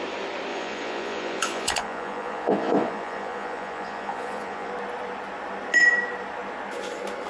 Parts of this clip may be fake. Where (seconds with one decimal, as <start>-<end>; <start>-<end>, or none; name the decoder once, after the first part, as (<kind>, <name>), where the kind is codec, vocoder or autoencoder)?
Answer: 0.5-4.7 (vocoder, Vocos)